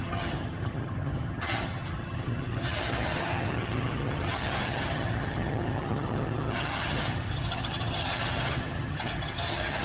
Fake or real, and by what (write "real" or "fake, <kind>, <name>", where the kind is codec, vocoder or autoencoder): fake, vocoder, HiFi-GAN